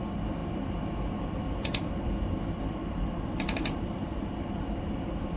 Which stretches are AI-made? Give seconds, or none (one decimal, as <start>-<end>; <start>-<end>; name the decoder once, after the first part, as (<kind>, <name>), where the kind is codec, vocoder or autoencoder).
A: 0.4-1.0 (vocoder, BigVGAN v2); 2.8-4.8